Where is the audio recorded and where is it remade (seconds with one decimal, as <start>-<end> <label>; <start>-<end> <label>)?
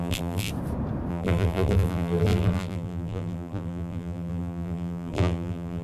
0.0-0.5 remade; 0.5-1.1 recorded; 1.1-5.8 remade